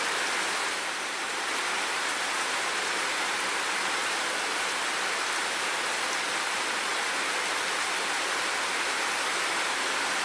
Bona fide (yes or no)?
yes